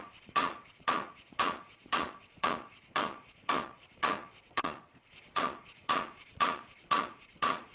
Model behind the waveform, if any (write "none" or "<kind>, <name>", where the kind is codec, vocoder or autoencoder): vocoder, Vocos